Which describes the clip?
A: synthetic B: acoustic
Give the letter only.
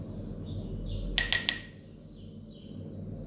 B